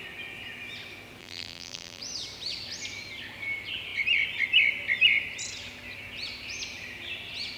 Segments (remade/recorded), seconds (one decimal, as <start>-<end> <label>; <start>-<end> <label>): 0.0-1.2 recorded; 1.2-2.0 remade; 2.0-7.6 recorded